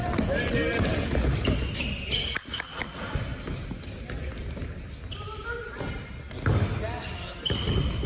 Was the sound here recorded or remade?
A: recorded